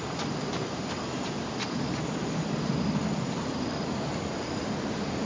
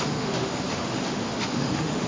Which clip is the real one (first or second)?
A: first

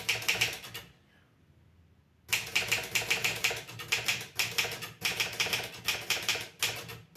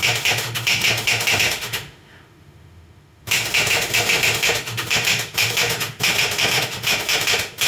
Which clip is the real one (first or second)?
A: first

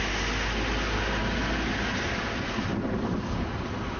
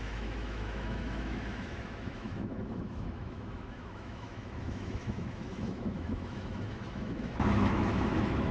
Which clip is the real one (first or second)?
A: first